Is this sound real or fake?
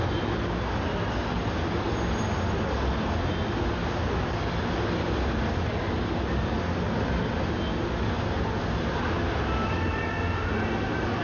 real